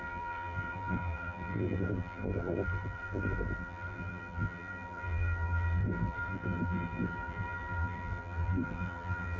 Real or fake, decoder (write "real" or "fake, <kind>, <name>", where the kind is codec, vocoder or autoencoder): fake, vocoder, BigVGAN v2